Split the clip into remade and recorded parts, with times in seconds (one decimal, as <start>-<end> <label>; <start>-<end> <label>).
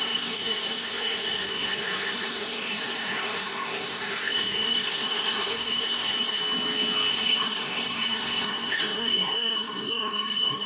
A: 0.0-6.4 remade; 6.4-7.1 recorded; 7.1-10.7 remade